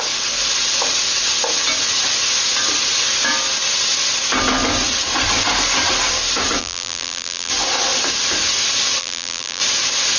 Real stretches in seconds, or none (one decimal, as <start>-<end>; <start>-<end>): 0.0-6.6; 7.5-9.0; 9.6-10.2

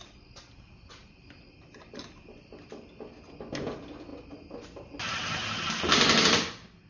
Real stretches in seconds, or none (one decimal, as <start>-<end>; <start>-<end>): 0.0-6.9